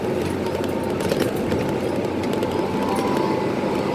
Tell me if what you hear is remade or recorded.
recorded